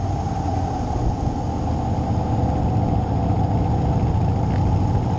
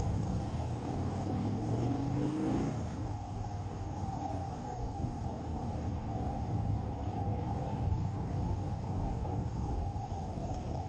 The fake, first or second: second